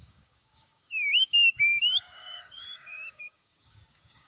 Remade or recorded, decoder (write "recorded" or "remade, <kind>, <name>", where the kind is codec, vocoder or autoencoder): remade, codec, DAC